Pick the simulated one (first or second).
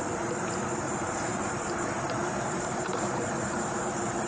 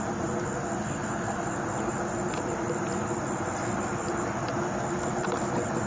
first